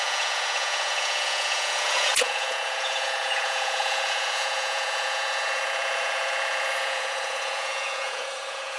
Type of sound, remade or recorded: remade